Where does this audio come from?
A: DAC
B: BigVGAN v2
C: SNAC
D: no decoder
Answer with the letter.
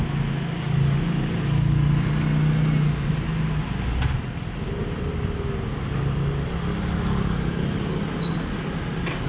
D